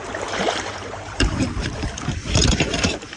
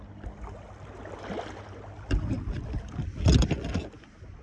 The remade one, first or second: first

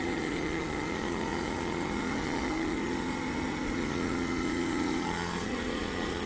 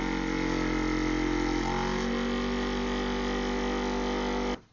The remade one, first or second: first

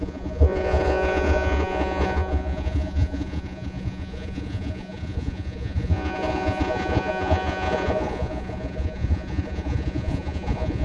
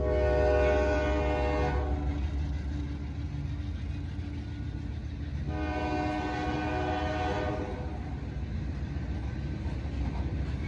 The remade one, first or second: first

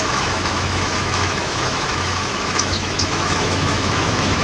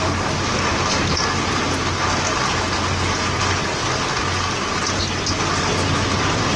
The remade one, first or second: first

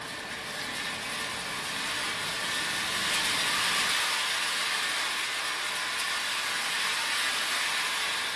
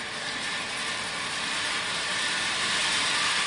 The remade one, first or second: second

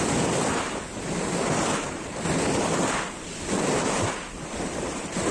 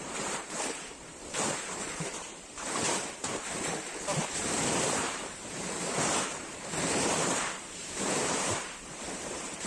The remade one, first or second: second